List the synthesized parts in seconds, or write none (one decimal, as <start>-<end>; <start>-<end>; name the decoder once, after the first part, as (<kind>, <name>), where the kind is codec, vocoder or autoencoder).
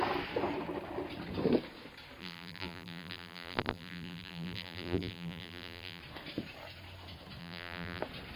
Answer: 2.2-6.0 (vocoder, BigVGAN v2); 7.4-8.0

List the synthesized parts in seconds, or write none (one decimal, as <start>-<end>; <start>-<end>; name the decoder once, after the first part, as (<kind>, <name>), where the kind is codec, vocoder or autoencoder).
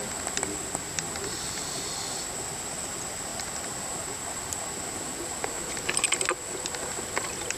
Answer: none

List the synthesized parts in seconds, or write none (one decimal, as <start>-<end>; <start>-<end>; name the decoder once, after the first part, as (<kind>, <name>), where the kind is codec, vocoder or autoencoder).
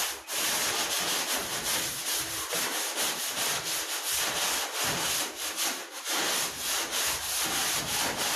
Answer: 1.4-3.5 (vocoder, BigVGAN v2); 5.8-7.8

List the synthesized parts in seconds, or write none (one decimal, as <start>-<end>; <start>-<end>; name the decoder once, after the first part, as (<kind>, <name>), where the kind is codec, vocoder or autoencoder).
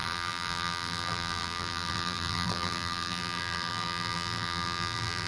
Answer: 0.0-5.3 (vocoder, BigVGAN v2)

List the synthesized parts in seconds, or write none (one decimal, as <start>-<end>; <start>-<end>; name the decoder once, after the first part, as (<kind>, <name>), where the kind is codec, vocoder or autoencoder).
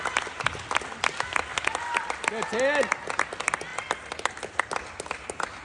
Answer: none